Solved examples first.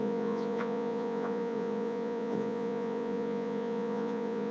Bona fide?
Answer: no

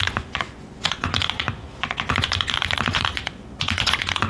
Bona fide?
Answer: no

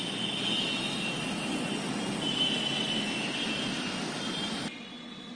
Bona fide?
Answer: yes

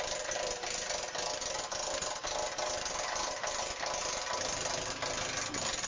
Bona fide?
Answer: yes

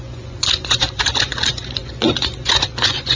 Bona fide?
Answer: no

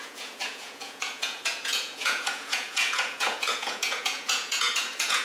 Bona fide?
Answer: no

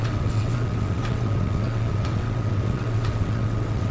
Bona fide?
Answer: no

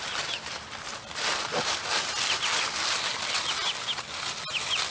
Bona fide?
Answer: yes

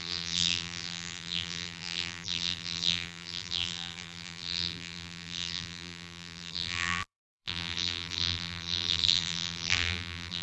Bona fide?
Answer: no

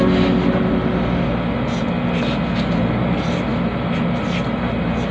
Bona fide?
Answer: yes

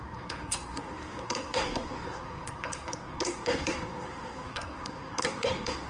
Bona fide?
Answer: no